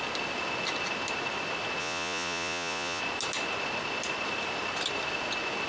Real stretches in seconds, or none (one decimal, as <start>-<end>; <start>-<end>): 0.0-1.8; 3.0-5.7